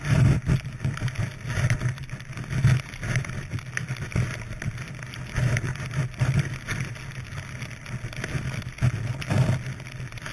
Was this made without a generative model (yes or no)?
yes